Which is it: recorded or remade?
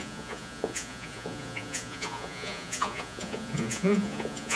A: remade